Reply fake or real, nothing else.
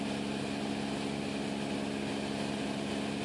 real